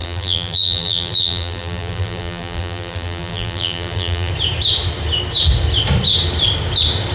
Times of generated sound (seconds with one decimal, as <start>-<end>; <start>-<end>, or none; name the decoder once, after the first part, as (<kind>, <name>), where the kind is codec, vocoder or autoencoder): 0.0-4.3 (vocoder, BigVGAN v2)